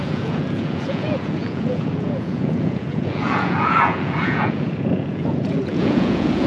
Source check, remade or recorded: remade